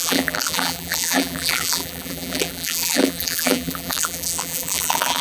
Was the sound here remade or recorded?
remade